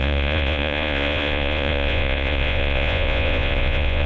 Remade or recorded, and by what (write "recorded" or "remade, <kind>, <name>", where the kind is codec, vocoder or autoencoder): remade, vocoder, Vocos